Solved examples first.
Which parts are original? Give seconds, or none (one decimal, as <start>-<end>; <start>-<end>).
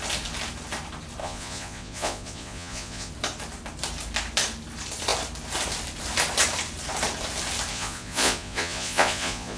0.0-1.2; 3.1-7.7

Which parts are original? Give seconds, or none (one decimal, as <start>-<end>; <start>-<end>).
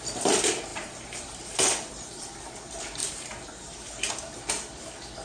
0.0-0.7; 2.5-3.0; 4.1-5.2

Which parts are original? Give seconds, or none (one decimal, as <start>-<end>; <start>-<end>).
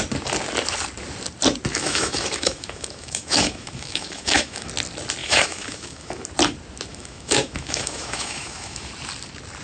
0.0-1.7; 4.7-5.2; 6.2-6.9; 8.9-9.6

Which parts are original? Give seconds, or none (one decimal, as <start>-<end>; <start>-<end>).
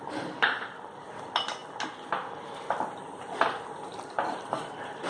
0.0-5.1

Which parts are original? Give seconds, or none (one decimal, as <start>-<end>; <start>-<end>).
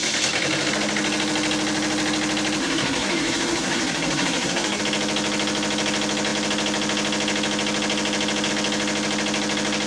0.0-2.6; 4.8-9.9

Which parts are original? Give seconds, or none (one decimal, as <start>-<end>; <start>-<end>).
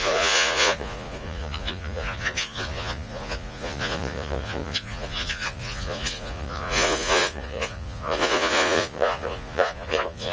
none